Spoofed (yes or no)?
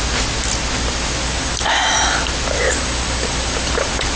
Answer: no